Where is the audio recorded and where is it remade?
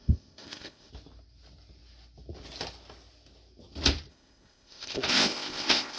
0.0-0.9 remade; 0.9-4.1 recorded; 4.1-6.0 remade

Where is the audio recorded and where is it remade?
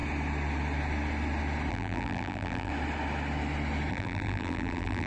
0.0-1.7 recorded; 1.7-2.7 remade; 2.7-3.9 recorded; 3.9-5.1 remade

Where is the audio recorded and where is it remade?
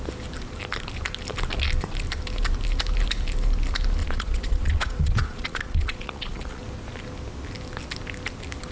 0.0-4.0 recorded; 4.0-6.6 remade; 6.6-8.7 recorded